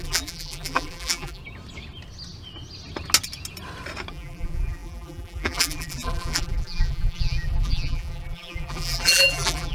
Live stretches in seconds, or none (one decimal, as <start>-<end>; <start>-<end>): 1.4-4.1